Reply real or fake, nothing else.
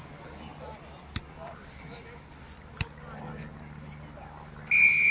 real